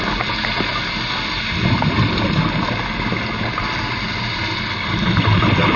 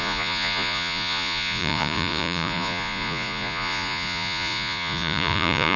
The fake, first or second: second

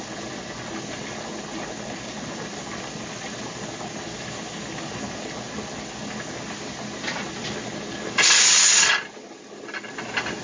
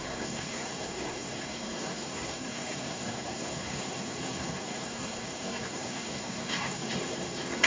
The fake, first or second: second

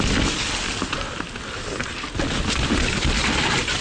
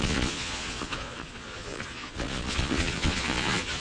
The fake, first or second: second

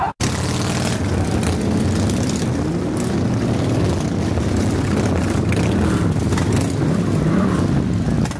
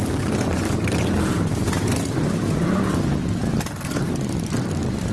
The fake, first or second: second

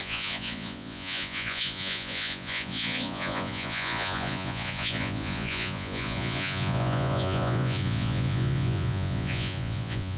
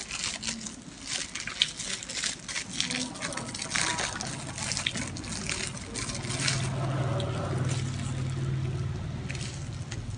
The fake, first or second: first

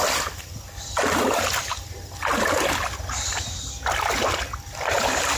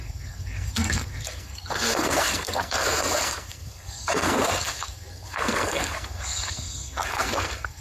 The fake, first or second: second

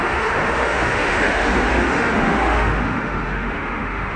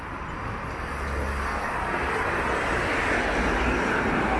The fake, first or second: first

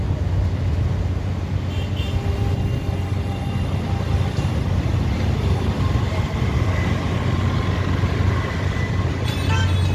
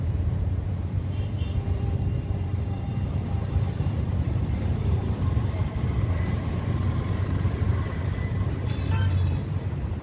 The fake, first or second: second